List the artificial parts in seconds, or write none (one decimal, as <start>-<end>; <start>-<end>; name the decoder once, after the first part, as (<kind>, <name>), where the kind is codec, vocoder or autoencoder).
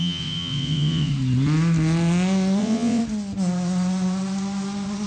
0.0-1.1 (vocoder, WaveNeXt); 2.6-3.0